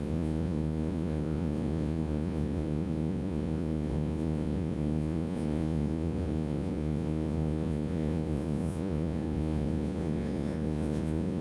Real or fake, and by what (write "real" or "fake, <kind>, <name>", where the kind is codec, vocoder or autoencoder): fake, vocoder, Vocos